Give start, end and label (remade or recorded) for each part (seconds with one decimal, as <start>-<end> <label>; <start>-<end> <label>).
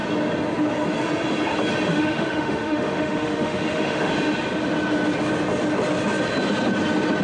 0.0-1.9 recorded; 1.9-4.1 remade; 4.1-7.2 recorded